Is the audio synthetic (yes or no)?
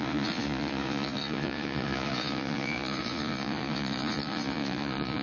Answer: yes